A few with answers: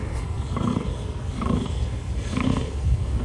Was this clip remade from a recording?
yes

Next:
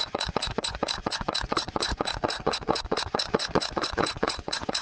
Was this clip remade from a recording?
yes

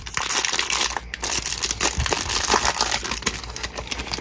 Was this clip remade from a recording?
no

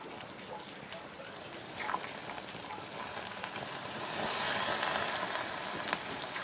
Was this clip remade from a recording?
no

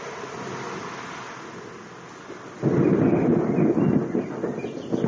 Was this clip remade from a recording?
no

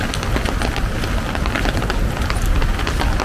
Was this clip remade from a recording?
no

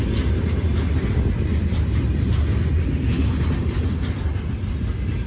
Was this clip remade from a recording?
no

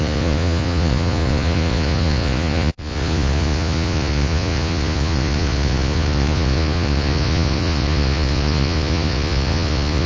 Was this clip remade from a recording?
yes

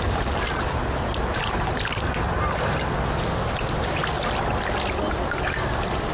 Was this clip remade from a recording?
no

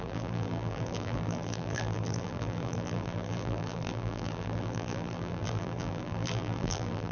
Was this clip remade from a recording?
yes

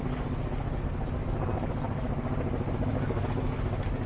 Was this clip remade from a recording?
no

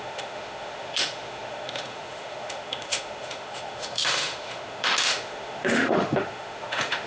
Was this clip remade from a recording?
yes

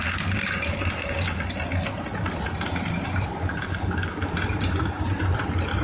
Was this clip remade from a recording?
no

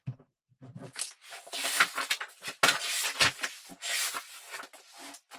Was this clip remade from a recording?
no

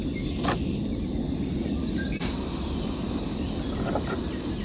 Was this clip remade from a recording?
no